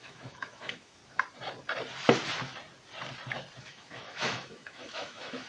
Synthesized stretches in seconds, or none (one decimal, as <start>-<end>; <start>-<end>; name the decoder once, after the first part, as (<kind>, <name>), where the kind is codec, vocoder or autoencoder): 0.0-1.0 (autoencoder, DAC-VAE); 3.6-5.5